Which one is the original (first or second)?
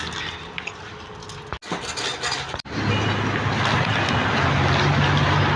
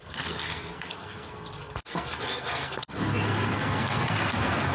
first